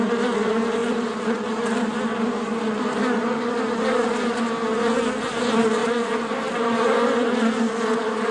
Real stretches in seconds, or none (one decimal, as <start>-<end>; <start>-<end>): 0.0-5.8; 7.7-8.3